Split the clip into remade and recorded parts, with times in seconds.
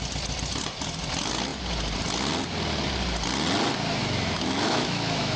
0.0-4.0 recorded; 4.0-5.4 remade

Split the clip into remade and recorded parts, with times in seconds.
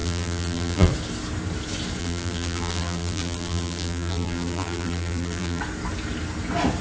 0.0-0.9 remade; 0.9-2.0 recorded; 2.0-5.6 remade; 5.6-6.8 recorded